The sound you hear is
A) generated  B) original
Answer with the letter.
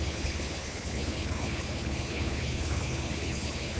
A